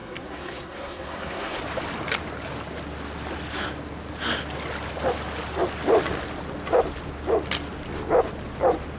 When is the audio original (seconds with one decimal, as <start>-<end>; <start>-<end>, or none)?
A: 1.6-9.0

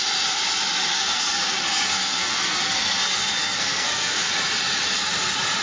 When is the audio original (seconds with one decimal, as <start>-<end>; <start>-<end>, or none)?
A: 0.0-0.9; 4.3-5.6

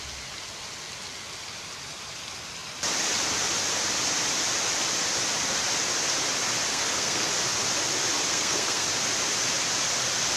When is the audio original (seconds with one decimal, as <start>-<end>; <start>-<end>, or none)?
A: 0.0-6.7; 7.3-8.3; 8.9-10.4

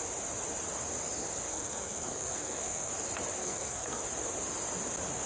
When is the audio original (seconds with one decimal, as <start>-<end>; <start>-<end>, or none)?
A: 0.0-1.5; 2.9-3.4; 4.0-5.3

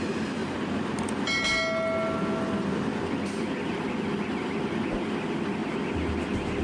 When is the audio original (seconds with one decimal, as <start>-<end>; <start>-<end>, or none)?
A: 0.0-6.6

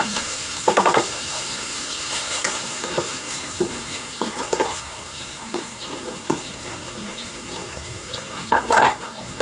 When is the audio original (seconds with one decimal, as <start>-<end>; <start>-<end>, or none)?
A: none

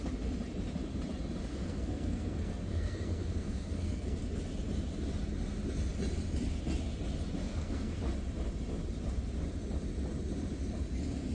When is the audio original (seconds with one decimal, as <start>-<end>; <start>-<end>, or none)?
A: 0.0-1.5; 4.2-7.4; 8.0-11.3

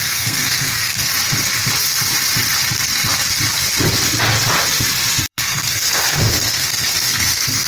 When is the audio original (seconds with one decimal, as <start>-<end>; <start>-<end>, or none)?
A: 1.1-5.3